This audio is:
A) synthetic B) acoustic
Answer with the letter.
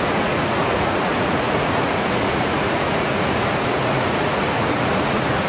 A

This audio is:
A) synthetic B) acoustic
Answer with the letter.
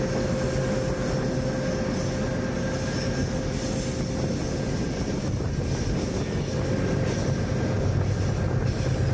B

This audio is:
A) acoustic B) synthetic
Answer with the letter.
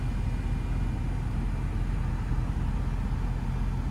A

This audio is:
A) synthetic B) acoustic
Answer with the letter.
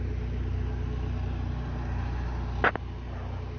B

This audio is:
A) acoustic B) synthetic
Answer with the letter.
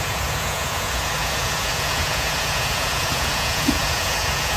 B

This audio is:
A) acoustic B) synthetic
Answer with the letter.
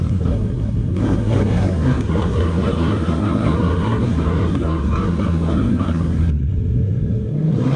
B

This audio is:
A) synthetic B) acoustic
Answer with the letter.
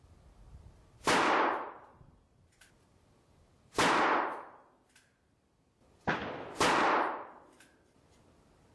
B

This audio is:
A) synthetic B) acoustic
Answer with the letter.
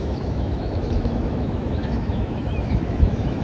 A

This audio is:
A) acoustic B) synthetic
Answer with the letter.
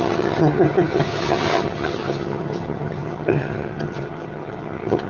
B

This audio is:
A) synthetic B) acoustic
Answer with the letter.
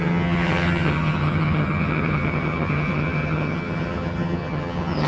A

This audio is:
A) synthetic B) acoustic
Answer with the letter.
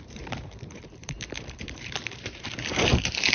A